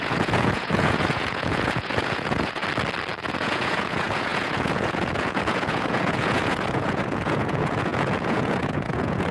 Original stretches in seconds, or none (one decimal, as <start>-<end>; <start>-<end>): 2.6-3.2